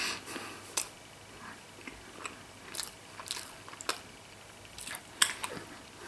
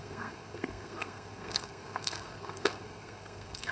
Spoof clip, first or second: second